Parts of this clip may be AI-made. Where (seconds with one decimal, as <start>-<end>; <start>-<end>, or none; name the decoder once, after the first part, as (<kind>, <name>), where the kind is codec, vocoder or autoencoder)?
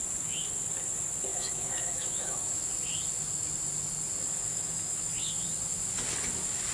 1.3-2.7 (autoencoder, DAC-VAE); 4.5-5.1